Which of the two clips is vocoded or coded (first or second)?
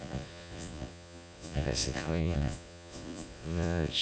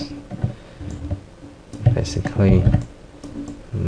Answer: first